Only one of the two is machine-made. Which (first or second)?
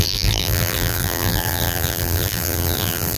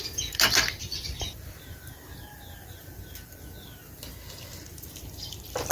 first